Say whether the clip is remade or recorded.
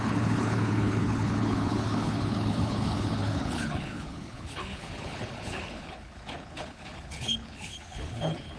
remade